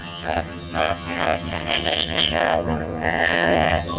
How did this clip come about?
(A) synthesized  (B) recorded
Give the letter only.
A